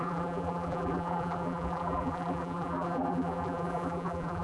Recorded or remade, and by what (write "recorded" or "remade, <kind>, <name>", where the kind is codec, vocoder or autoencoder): remade, vocoder, BigVGAN v2